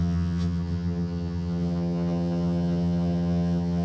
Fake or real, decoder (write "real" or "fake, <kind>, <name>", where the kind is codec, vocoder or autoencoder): fake, vocoder, HiFi-GAN